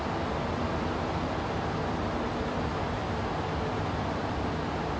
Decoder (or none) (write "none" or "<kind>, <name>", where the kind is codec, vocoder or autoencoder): none